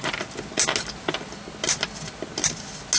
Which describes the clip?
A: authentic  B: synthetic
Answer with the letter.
A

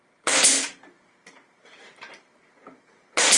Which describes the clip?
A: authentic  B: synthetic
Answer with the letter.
B